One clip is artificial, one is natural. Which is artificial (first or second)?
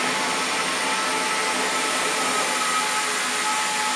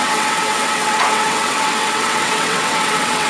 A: second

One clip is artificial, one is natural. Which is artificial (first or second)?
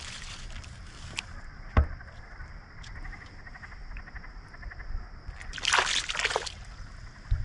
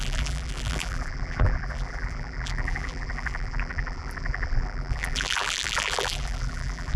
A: second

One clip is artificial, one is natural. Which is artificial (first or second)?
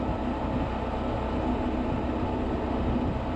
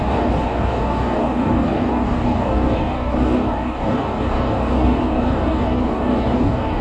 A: second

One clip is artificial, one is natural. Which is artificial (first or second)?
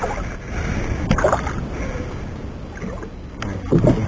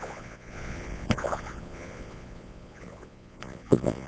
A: second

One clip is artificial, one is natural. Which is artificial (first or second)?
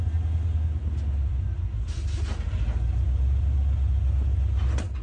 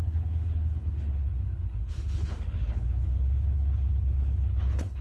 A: second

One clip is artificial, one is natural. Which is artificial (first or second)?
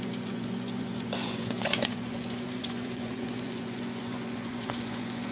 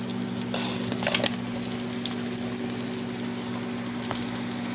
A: first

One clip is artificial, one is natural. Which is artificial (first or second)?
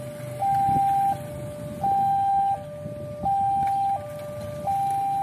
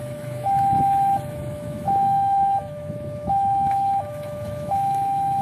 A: second